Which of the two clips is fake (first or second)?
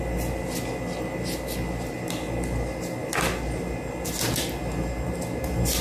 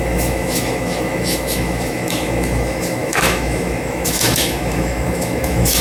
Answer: second